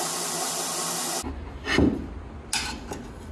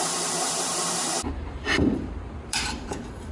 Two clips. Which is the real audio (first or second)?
first